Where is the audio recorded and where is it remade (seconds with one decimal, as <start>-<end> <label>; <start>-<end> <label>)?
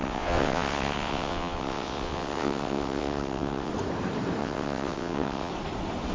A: 0.0-3.7 remade; 3.7-4.4 recorded; 4.4-5.5 remade; 5.5-6.1 recorded